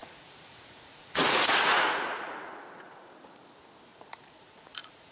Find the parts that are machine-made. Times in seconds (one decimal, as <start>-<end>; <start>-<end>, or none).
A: 0.0-3.1; 3.9-5.1